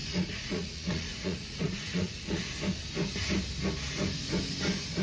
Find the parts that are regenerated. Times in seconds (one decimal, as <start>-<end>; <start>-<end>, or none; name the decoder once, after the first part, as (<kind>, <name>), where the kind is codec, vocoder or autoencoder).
0.0-2.6 (vocoder, Vocos)